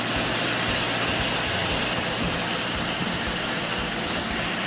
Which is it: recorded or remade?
recorded